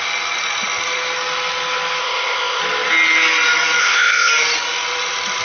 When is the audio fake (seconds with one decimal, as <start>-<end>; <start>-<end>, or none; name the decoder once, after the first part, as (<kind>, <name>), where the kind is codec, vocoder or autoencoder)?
2.0-2.6 (codec, ZipCodec); 3.8-4.3